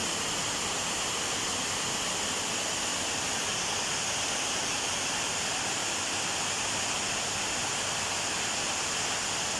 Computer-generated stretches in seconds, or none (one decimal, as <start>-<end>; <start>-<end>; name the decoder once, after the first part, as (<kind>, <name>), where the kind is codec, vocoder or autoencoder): 0.0-2.9 (vocoder, BigVGAN v2); 4.2-9.6